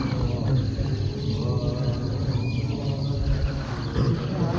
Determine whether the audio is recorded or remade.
recorded